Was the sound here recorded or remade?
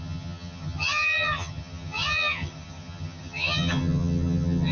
remade